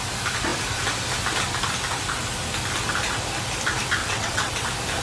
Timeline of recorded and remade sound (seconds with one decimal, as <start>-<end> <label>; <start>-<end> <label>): 0.0-4.0 recorded; 4.0-4.5 remade; 4.5-5.0 recorded